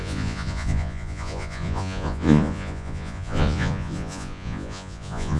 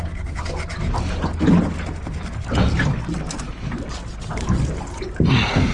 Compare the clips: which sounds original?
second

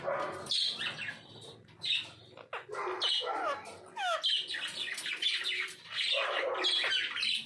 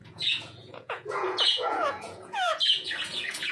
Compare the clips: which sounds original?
first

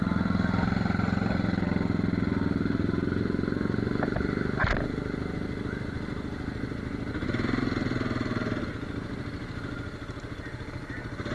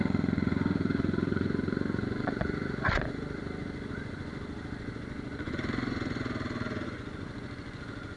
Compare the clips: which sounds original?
first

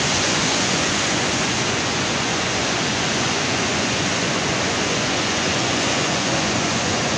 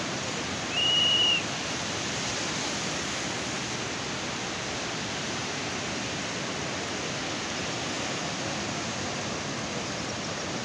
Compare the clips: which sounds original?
second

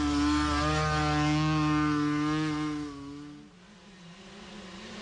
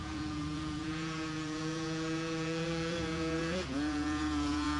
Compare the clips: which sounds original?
first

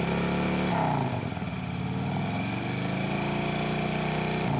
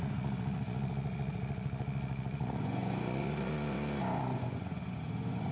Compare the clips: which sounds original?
first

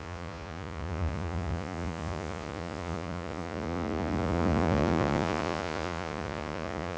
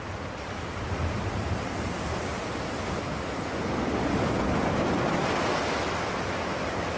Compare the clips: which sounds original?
second